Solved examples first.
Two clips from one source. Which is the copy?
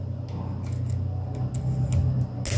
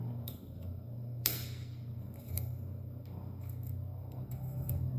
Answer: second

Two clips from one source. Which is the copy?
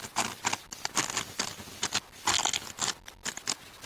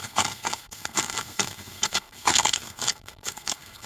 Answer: second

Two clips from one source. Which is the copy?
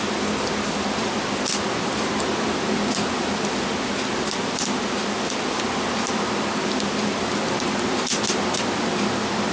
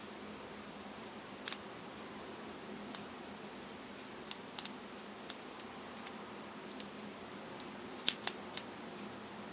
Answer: second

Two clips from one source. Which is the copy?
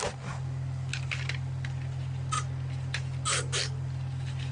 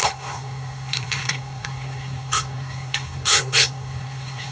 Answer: second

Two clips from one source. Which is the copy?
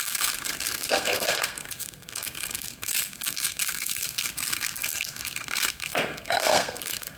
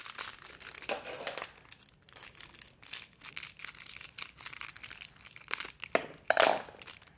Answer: first